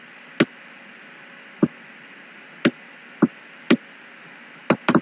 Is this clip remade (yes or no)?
no